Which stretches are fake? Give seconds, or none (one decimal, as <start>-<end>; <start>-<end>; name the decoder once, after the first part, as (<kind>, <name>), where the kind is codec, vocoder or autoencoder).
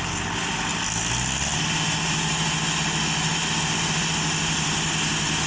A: none